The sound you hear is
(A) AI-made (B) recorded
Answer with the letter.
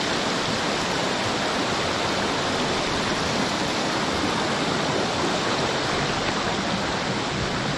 B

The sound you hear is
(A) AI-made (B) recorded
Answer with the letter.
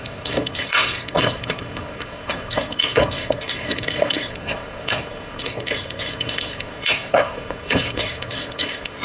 A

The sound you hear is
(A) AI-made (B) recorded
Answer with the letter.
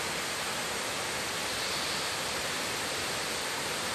B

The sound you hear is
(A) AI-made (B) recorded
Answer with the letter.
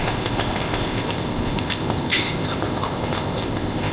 A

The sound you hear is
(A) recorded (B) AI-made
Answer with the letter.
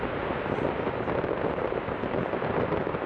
A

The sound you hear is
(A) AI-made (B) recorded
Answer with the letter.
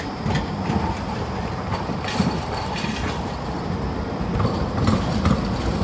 B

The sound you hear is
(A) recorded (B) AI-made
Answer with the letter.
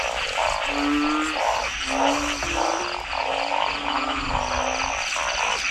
A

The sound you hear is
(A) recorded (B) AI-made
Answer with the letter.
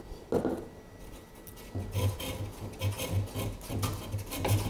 A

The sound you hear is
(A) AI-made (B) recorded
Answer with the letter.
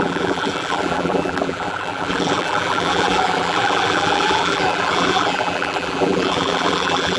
A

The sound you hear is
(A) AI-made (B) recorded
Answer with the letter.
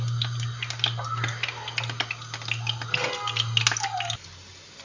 B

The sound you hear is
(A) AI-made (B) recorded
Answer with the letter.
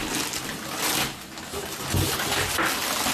B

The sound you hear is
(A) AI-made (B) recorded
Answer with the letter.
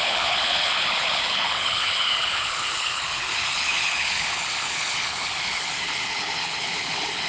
A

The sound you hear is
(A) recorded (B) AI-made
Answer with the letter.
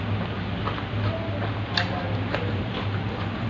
A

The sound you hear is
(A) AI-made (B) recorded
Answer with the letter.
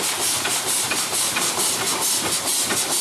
B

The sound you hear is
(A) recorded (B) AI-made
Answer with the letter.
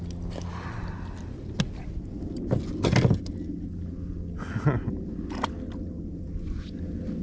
A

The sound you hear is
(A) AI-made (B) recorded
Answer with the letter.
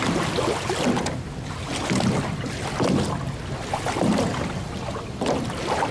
B